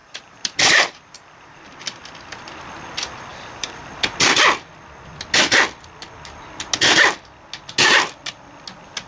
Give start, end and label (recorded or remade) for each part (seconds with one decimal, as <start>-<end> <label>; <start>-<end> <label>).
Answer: 0.0-2.0 remade; 2.0-3.3 recorded; 3.3-3.9 remade; 3.9-9.1 recorded